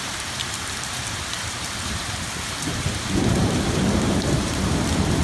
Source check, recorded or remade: remade